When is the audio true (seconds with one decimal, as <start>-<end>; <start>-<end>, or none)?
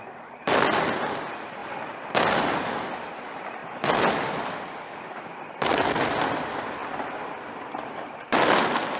0.0-9.0